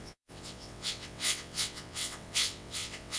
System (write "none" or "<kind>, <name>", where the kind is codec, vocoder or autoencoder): vocoder, WaveNeXt